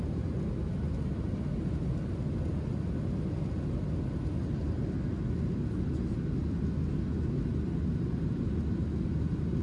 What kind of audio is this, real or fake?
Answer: real